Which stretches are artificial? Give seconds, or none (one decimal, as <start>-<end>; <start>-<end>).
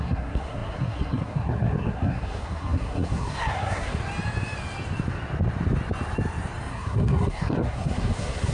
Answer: 0.0-4.0; 6.7-8.5